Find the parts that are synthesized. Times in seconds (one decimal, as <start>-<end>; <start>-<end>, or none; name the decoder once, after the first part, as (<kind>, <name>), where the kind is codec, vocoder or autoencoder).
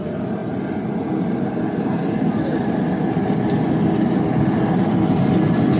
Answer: none